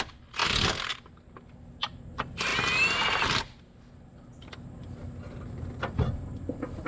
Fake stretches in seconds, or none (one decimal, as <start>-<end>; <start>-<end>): none